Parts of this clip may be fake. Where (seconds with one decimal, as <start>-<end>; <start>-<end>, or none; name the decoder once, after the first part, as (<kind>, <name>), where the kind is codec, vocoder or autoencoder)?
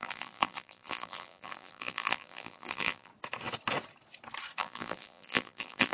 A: 0.0-3.1 (vocoder, BigVGAN v2); 4.6-5.9